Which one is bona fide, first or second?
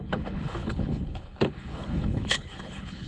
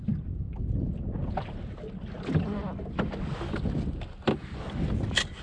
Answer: second